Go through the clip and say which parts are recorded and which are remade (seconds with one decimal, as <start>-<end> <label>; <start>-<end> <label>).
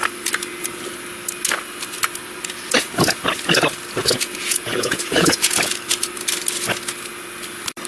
0.0-4.0 recorded; 4.0-5.6 remade; 5.6-7.9 recorded